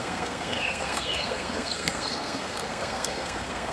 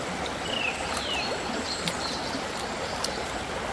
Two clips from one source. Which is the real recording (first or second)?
second